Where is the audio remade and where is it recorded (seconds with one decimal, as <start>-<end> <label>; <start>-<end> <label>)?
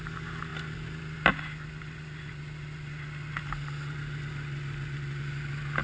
0.0-5.8 recorded